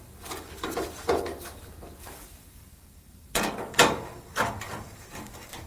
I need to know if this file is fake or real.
fake